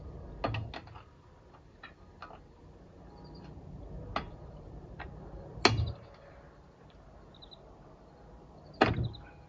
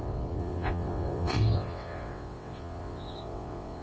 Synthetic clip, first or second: second